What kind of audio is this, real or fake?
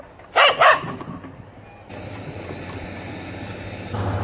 real